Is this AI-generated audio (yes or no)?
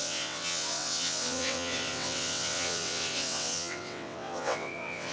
yes